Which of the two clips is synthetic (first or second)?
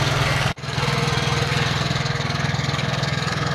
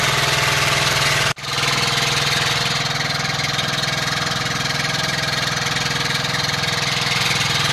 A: first